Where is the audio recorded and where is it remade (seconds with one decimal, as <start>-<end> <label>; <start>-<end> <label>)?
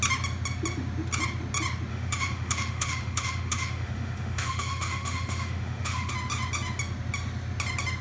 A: 0.0-1.9 recorded; 1.9-6.1 remade; 6.1-8.0 recorded